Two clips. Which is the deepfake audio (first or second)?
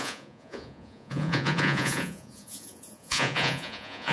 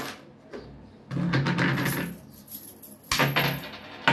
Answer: first